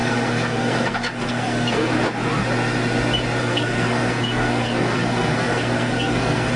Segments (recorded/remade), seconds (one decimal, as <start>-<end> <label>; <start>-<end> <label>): 0.0-1.9 remade; 1.9-3.4 recorded; 3.4-6.6 remade